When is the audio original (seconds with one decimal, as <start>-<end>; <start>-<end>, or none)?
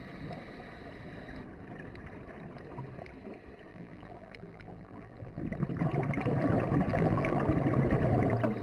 0.0-3.7; 5.4-6.9; 7.4-8.6